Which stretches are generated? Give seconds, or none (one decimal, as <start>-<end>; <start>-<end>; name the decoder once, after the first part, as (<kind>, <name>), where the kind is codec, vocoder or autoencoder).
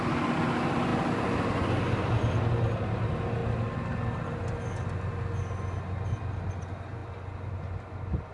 none